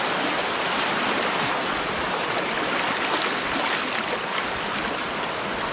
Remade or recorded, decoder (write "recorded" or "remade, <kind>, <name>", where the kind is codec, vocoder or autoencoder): recorded